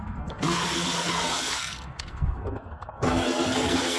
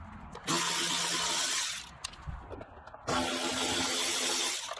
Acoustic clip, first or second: second